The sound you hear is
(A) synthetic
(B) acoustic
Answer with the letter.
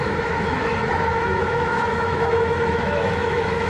A